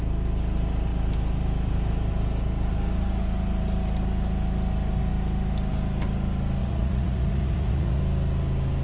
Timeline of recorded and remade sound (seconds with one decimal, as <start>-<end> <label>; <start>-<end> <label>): 0.0-6.6 recorded; 6.6-8.0 remade; 8.0-8.8 recorded